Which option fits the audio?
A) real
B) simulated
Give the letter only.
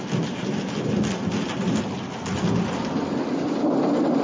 A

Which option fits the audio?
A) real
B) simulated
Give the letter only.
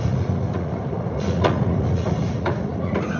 B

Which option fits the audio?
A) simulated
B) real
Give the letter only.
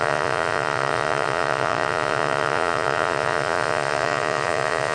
A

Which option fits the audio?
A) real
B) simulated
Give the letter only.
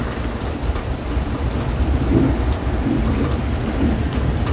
A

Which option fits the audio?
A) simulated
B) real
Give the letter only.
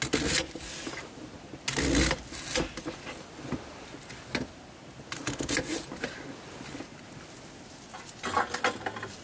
B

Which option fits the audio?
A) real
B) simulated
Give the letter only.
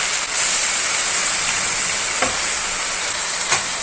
A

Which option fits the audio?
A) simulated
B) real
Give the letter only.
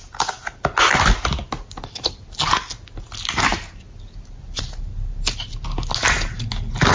B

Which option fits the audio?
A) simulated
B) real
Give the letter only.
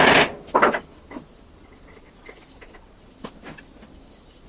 B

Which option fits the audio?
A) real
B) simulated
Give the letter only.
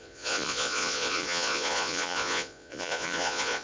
B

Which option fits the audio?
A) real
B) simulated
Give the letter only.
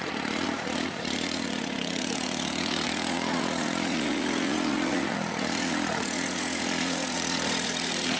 B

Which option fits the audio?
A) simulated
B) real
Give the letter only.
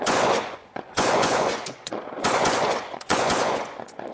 A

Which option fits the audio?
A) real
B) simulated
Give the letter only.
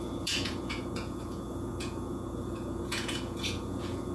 B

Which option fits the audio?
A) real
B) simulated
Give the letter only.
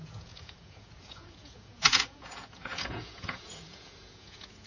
B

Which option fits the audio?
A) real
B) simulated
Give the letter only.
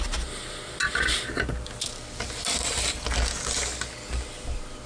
A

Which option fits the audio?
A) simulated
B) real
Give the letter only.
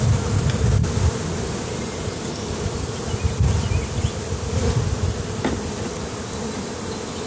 B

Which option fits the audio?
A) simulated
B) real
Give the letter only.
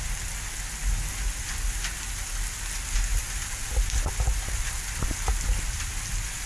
B